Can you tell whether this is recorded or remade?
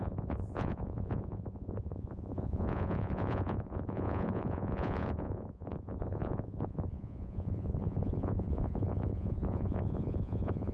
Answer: remade